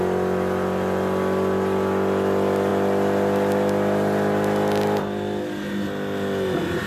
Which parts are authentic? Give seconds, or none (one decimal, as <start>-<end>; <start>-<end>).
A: 0.0-6.9